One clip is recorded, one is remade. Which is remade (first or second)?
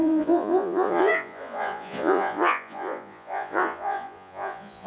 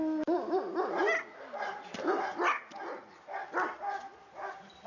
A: first